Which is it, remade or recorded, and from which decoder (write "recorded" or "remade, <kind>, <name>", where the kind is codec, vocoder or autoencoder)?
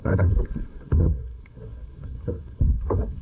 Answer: remade, codec, SNAC